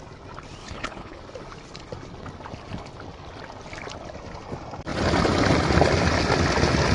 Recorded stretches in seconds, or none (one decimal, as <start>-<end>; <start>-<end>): 0.0-0.6; 1.2-6.9